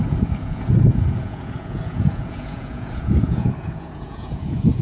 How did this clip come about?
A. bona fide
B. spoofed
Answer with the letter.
B